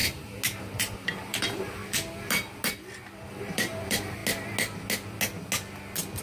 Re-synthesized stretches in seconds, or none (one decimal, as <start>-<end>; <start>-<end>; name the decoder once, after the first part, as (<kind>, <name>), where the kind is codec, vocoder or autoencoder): 0.6-1.8 (vocoder, BigVGAN v2); 3.3-4.2